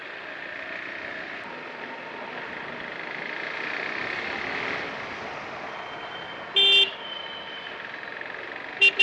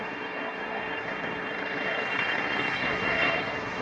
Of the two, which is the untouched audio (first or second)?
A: first